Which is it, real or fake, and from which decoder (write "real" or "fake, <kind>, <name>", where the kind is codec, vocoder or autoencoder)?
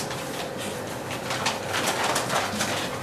real